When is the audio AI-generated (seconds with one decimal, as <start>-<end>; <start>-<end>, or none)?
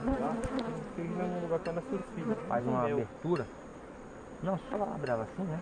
0.0-0.7; 2.0-2.6; 3.7-4.3